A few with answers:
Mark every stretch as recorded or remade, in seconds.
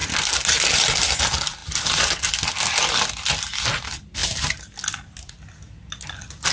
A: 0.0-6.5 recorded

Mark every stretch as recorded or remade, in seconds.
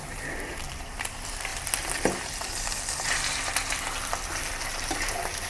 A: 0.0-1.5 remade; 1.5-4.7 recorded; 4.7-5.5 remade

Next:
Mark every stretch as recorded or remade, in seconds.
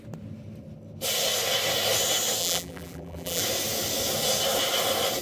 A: 0.0-2.4 recorded; 2.4-3.4 remade; 3.4-5.2 recorded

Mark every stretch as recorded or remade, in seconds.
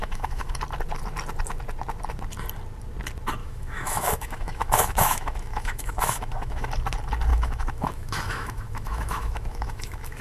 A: 0.0-0.5 remade; 0.5-3.4 recorded; 3.4-6.7 remade; 6.7-7.3 recorded; 7.3-10.2 remade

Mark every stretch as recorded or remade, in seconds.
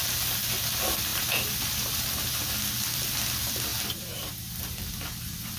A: 0.0-5.6 recorded